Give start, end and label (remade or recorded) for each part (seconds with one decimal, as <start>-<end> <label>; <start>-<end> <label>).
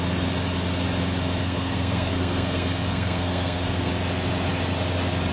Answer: 0.0-1.4 recorded; 1.4-3.9 remade; 3.9-5.3 recorded